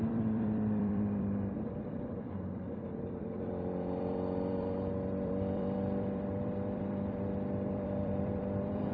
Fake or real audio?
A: fake